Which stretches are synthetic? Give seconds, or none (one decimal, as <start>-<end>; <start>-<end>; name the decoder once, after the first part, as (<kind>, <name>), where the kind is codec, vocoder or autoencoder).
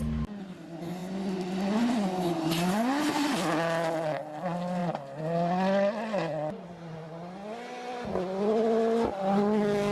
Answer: none